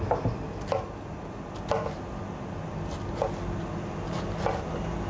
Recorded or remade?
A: recorded